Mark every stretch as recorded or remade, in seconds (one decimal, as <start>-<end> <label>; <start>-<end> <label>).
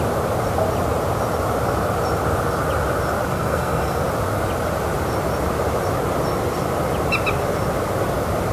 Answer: 0.0-3.3 recorded; 3.3-4.0 remade; 4.0-8.5 recorded